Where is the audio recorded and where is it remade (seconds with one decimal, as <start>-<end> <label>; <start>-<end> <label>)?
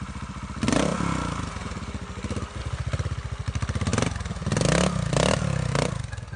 0.0-6.4 recorded